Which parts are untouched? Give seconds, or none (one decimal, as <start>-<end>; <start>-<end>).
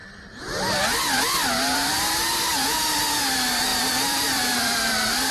0.0-3.7